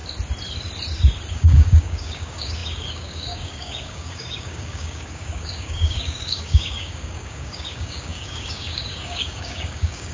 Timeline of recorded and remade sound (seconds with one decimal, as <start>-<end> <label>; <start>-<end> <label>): 0.0-1.3 recorded; 1.3-10.1 remade